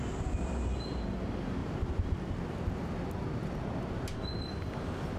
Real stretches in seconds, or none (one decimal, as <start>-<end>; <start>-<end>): 0.0-1.6; 2.5-5.2